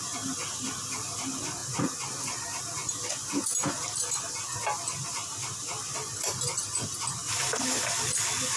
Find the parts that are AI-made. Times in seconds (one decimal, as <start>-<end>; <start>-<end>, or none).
none